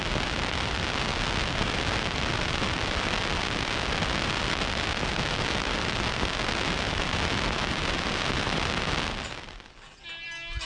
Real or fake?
real